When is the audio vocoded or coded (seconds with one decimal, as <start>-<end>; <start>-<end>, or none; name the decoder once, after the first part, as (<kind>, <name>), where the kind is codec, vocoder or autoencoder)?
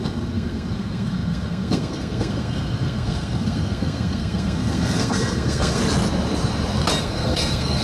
0.0-5.8 (codec, SNAC); 7.0-7.8